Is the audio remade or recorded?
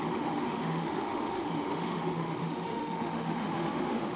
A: remade